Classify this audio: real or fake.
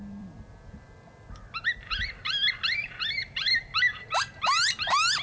fake